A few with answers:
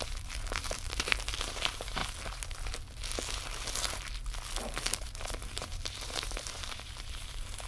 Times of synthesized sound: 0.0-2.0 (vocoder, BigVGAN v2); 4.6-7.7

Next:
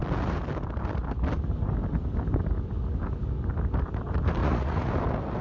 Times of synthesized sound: 4.4-4.9 (vocoder, Vocos)

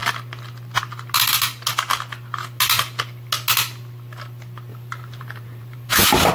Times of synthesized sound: 4.7-6.3 (vocoder, BigVGAN v2)